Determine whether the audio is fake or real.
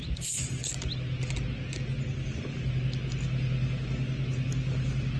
real